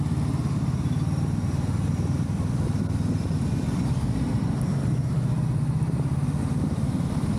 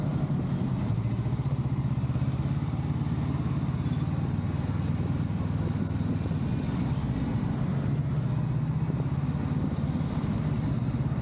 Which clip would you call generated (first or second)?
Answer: first